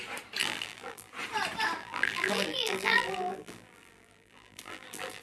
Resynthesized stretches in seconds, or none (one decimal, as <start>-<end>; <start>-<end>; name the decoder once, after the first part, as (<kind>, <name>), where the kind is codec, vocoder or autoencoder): 0.4-1.1 (vocoder, BigVGAN v2); 1.8-5.2